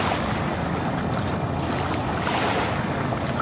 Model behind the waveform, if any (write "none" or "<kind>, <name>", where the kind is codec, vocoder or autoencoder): none